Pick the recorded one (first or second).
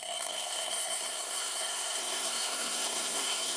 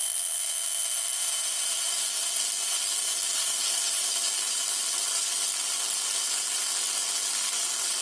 second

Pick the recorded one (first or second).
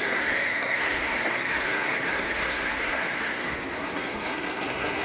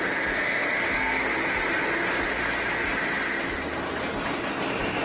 second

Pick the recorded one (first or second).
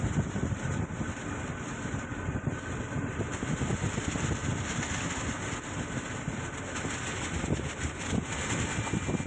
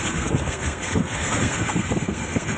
first